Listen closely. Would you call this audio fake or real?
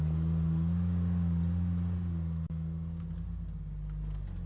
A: real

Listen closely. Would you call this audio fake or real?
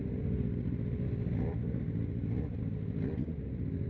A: real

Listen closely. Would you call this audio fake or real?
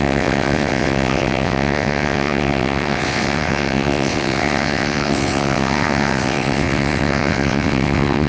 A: fake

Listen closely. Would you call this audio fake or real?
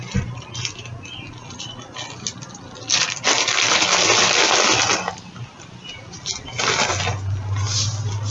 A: real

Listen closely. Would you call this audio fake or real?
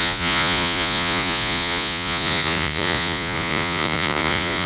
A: fake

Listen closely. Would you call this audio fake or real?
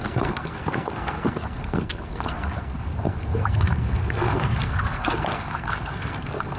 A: fake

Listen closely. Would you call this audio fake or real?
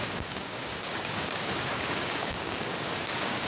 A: fake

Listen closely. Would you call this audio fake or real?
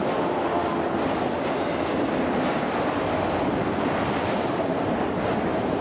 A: real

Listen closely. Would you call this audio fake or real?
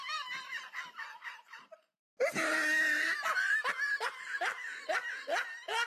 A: real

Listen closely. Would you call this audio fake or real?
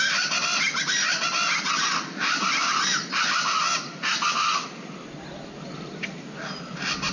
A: real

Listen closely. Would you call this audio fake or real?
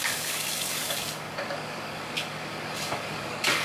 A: fake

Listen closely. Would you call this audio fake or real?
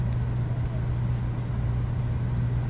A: real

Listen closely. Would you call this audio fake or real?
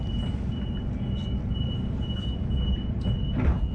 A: real